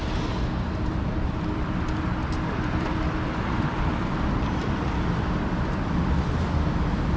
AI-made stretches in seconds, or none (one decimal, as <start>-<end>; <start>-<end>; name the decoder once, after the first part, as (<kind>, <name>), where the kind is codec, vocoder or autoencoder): 0.0-7.2 (vocoder, BigVGAN v2)